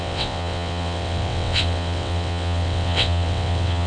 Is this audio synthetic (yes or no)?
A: yes